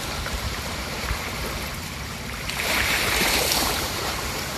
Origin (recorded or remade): remade